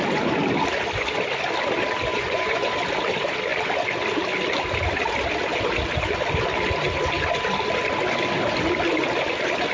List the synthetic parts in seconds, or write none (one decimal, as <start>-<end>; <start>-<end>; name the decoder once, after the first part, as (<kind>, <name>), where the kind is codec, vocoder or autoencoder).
2.1-2.7 (vocoder, Vocos)